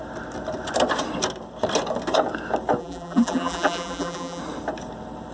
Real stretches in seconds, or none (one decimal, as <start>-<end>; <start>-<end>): 0.0-2.8; 4.4-5.3